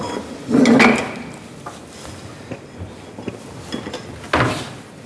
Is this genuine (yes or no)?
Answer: yes